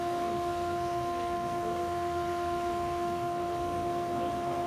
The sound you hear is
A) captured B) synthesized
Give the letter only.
B